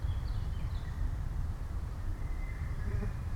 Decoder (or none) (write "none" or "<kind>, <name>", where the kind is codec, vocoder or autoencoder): vocoder, BigVGAN v2